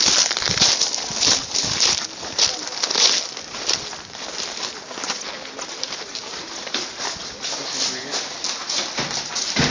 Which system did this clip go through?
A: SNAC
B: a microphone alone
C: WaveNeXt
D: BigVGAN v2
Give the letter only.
B